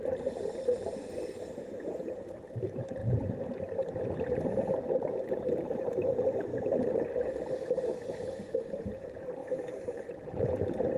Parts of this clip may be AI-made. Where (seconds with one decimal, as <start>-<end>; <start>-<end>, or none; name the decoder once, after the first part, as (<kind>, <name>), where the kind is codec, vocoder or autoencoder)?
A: 0.0-6.5 (vocoder, BigVGAN v2); 8.1-9.4; 9.9-11.0